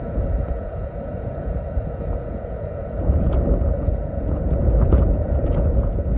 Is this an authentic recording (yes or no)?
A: no